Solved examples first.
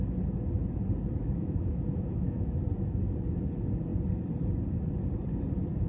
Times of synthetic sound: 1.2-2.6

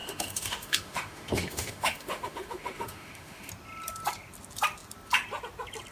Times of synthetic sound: 0.0-3.5

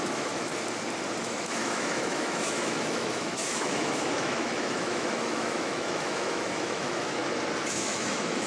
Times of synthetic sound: 0.0-0.5; 1.2-7.2; 7.7-8.5

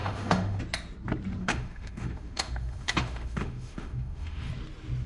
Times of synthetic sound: 0.0-0.6; 1.4-4.5